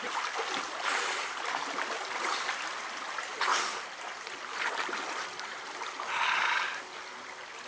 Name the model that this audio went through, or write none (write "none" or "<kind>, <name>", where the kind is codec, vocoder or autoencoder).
none